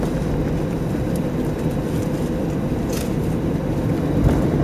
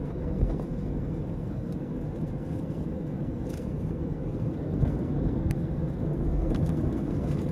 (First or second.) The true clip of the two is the first